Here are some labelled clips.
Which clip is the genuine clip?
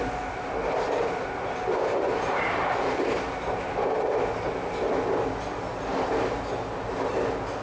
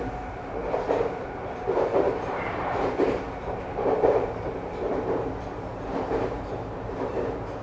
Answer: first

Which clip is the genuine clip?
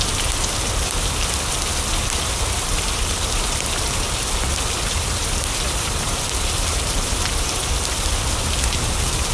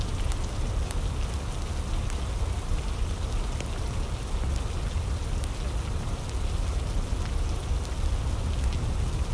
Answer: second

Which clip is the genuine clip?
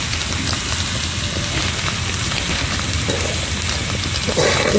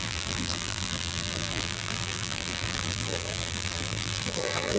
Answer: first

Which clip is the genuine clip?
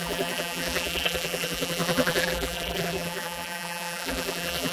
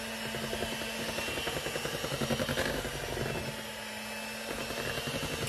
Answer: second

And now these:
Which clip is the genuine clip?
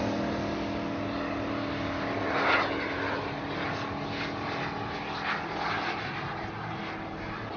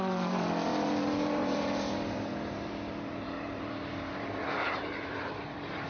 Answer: first